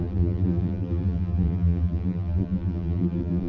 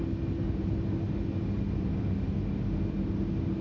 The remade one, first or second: first